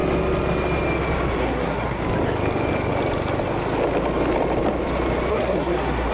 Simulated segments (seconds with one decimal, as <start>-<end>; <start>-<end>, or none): 1.4-2.0; 5.3-6.1